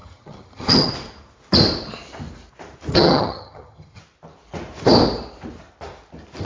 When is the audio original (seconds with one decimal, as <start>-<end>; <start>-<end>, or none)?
0.9-2.9; 4.0-6.4